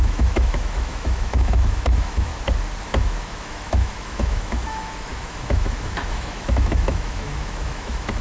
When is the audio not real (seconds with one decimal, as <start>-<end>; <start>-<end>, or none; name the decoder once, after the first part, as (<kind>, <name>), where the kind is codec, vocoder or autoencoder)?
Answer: 0.0-2.3 (autoencoder, DAC-VAE); 2.8-8.2